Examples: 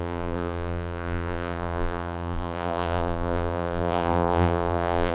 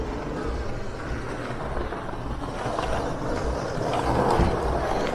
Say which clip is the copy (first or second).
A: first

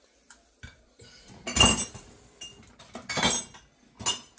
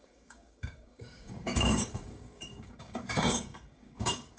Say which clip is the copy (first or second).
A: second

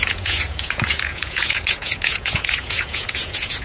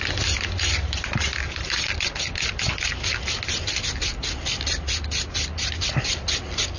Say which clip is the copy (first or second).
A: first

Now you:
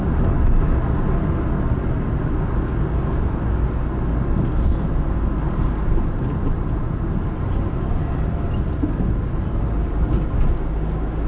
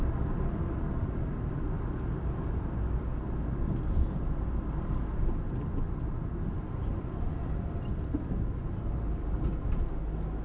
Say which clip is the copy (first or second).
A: second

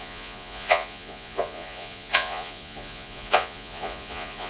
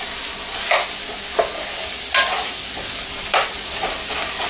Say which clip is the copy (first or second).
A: first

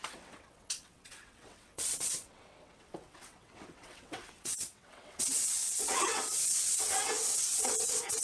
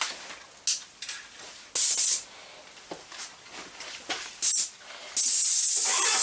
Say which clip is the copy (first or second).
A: first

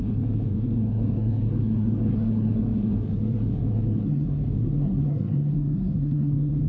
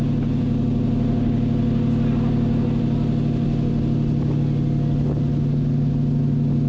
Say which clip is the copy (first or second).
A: first